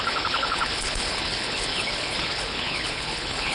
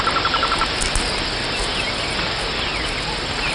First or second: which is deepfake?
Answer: first